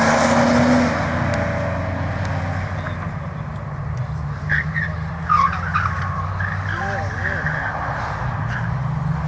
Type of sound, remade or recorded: recorded